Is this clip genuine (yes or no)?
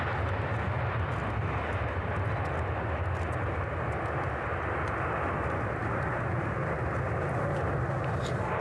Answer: yes